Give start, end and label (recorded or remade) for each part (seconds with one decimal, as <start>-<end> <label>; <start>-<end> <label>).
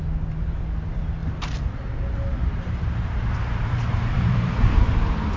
0.0-2.3 recorded; 2.3-4.5 remade; 4.5-5.4 recorded